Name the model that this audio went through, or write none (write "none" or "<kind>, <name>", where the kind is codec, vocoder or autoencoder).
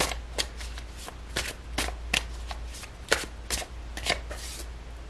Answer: none